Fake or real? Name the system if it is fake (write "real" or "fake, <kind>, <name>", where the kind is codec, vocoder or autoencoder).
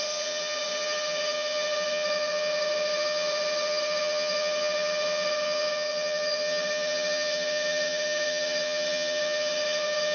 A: fake, vocoder, HiFi-GAN